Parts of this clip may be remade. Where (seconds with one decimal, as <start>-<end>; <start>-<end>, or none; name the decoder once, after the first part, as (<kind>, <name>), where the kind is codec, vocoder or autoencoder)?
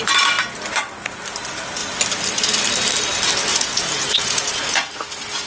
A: 3.5-4.9 (vocoder, Vocos)